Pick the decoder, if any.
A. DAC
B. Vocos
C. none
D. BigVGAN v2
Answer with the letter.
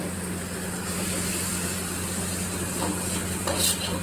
C